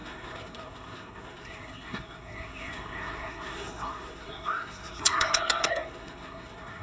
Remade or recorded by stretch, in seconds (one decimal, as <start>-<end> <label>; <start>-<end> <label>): 0.0-6.8 remade